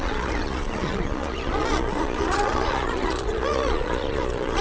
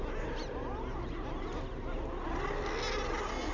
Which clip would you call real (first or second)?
second